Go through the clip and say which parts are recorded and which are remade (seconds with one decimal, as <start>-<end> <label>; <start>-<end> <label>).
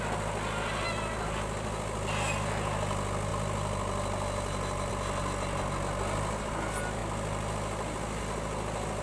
0.0-7.0 recorded; 7.0-8.2 remade; 8.2-9.0 recorded